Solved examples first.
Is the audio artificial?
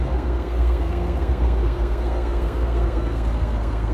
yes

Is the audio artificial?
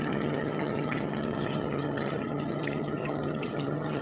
yes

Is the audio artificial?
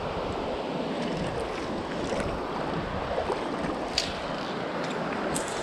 no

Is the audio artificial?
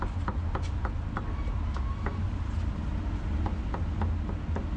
no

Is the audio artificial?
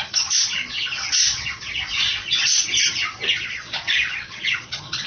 yes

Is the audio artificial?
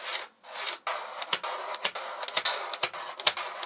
no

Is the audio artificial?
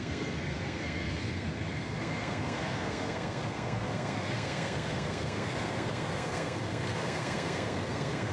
yes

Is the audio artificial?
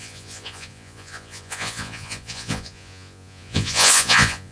yes